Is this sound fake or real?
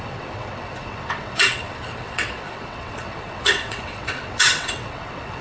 fake